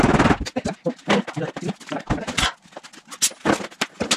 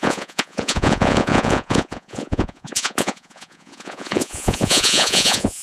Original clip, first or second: first